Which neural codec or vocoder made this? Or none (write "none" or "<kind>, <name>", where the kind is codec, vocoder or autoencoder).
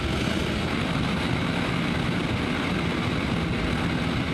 none